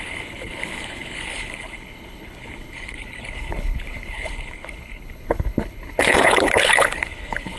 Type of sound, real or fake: fake